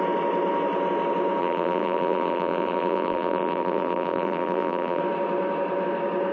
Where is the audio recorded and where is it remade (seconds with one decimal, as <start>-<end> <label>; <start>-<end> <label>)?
0.0-1.4 recorded; 1.4-5.0 remade; 5.0-6.3 recorded